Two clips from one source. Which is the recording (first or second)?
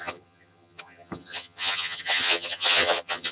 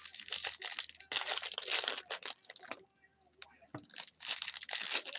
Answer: second